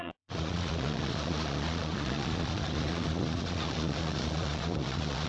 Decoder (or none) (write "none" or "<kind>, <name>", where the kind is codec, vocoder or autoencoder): vocoder, Vocos